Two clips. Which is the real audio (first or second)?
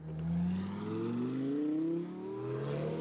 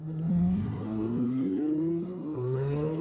first